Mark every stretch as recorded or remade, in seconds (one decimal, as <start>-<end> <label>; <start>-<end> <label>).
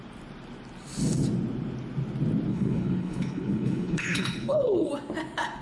0.0-2.5 recorded; 2.5-4.9 remade; 4.9-5.6 recorded